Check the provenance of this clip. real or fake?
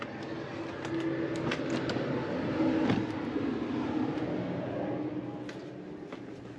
real